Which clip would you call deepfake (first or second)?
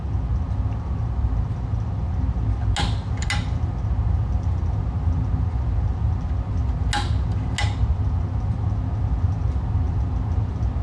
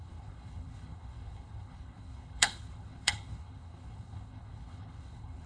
second